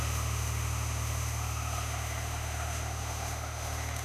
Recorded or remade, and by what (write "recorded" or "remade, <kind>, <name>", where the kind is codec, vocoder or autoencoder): remade, autoencoder, DAC-VAE